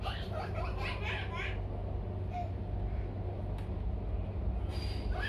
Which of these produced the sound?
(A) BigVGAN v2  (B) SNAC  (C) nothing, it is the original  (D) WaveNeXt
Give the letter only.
C